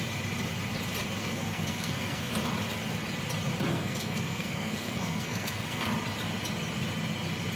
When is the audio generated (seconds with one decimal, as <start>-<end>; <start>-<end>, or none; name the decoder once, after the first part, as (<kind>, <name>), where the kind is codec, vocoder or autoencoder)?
1.2-2.3 (codec, SNAC); 3.7-5.9